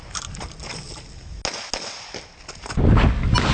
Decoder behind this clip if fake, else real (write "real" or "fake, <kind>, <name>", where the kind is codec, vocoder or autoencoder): real